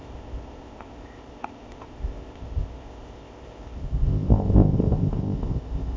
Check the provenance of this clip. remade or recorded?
remade